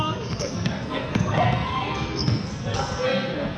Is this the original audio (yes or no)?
no